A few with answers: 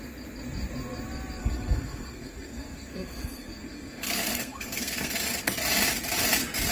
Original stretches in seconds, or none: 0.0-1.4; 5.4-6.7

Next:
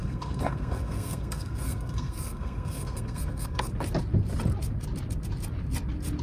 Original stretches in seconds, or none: 3.7-6.2

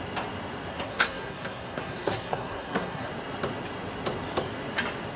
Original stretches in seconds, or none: 0.0-0.7; 3.1-5.2